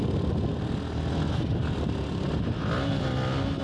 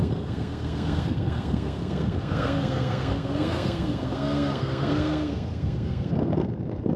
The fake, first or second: second